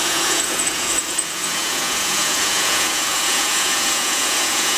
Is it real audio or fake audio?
fake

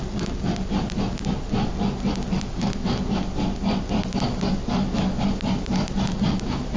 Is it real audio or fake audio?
real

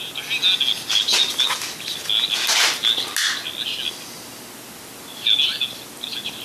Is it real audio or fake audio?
real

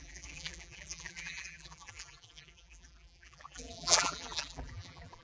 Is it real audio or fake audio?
fake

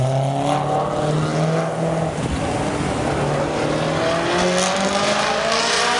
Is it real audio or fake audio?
real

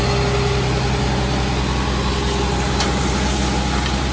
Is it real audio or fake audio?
real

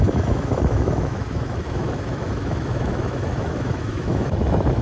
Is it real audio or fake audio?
fake